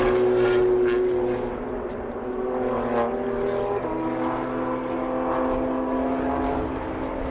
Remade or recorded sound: recorded